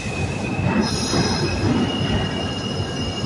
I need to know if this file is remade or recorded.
recorded